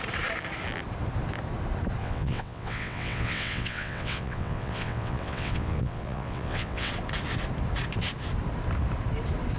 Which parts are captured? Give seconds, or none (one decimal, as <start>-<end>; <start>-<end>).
0.0-2.0; 6.9-9.6